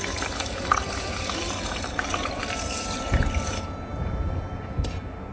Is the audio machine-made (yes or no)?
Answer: yes